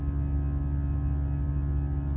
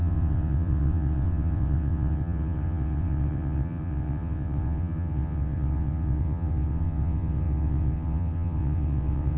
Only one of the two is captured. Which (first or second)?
first